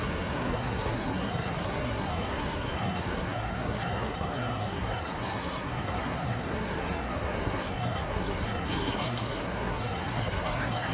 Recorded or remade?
remade